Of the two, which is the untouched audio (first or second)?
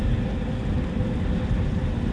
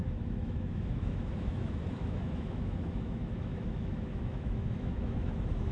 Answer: first